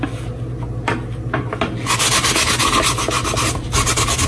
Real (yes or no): yes